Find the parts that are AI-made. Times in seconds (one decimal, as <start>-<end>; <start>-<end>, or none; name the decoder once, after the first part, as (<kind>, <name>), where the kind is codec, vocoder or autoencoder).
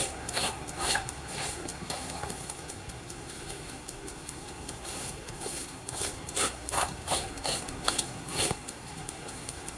0.0-9.8 (codec, SNAC)